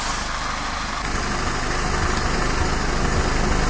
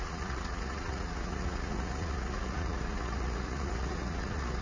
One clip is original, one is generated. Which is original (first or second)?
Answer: first